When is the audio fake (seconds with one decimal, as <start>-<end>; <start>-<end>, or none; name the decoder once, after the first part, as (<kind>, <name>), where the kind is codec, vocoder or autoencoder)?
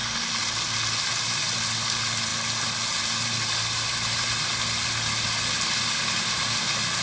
none